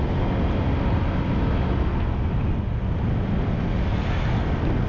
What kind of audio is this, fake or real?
real